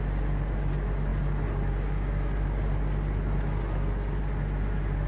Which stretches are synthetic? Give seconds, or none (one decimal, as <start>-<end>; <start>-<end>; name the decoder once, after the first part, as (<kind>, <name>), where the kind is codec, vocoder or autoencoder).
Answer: none